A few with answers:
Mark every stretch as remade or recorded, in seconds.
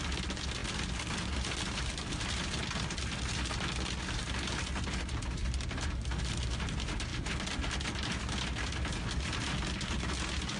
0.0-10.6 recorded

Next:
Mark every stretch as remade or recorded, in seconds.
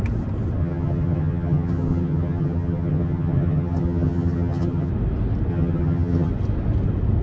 0.0-0.6 recorded; 0.6-4.9 remade; 4.9-5.5 recorded; 5.5-6.3 remade; 6.3-7.2 recorded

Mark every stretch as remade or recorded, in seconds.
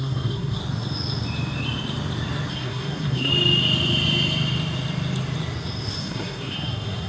0.0-0.6 remade; 0.6-2.5 recorded; 2.5-3.3 remade; 3.3-6.0 recorded; 6.0-7.1 remade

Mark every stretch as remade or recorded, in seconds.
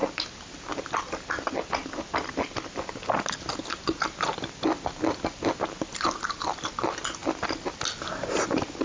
0.0-8.8 recorded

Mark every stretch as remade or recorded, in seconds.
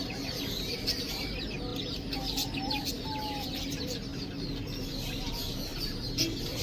0.0-6.6 recorded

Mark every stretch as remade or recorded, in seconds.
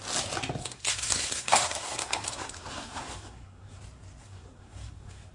0.0-0.6 recorded; 0.6-3.8 remade; 3.8-4.2 recorded; 4.2-5.3 remade